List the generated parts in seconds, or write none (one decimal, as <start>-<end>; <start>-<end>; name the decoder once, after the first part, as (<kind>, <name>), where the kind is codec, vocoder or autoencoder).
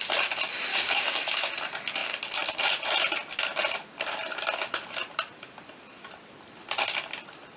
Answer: 0.7-1.5 (codec, DAC)